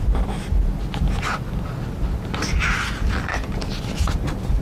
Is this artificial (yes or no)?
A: no